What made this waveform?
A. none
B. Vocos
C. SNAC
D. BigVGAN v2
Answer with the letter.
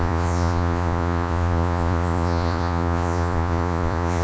B